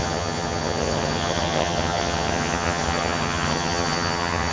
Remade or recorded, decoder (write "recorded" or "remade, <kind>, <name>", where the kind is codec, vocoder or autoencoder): remade, vocoder, HiFi-GAN